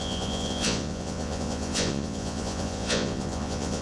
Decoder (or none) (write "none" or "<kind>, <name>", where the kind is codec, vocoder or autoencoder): vocoder, Vocos